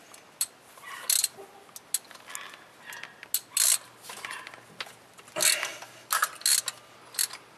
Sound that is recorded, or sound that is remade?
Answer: recorded